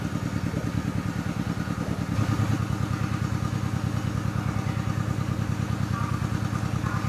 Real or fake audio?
real